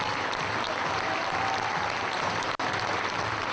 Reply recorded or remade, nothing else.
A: recorded